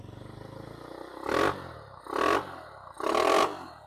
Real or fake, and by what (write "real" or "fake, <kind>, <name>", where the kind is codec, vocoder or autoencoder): real